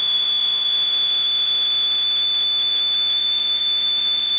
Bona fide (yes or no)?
no